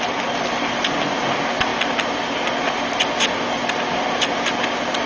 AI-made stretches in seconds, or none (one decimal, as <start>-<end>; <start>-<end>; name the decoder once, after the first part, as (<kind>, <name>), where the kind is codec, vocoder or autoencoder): none